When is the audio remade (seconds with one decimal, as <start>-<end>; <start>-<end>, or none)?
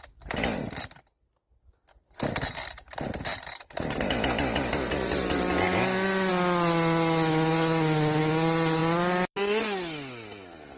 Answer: none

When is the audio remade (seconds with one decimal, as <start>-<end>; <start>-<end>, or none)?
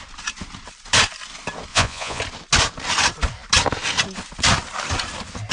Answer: 1.7-2.2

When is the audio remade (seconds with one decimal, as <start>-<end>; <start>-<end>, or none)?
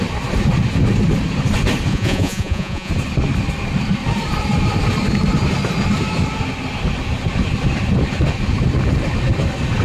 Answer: 1.9-2.9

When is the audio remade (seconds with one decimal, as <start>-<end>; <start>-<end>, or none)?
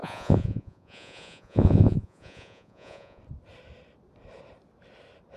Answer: 0.0-3.2